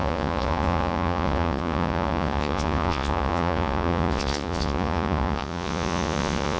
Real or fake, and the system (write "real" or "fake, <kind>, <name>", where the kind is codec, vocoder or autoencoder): fake, vocoder, Vocos